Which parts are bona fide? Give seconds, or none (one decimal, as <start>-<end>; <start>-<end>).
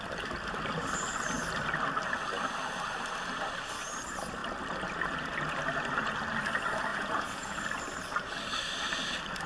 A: 0.0-6.9; 7.6-9.5